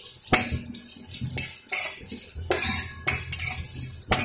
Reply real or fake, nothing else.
real